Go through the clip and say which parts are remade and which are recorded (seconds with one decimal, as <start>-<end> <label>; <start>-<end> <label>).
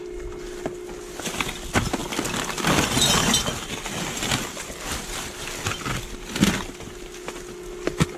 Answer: 0.0-8.2 recorded